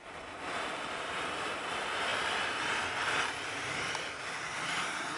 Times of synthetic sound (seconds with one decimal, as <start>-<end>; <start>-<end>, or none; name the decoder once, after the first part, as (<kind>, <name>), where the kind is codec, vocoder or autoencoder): none